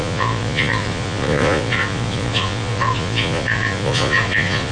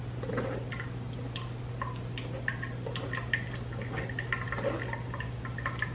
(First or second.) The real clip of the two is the second